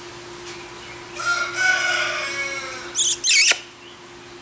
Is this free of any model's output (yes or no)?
yes